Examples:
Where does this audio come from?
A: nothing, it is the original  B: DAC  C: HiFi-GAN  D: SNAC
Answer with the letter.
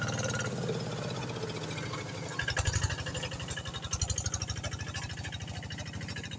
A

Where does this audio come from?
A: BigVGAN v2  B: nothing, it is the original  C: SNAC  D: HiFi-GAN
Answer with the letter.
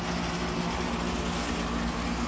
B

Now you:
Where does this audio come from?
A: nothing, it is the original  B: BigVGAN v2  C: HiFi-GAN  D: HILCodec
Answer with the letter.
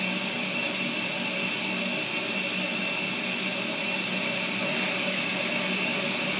A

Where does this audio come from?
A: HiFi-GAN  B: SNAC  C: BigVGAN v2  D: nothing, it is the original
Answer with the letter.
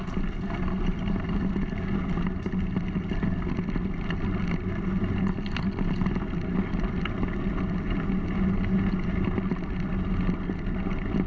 D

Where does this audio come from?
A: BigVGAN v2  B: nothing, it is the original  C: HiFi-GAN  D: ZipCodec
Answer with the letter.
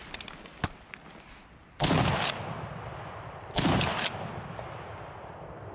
B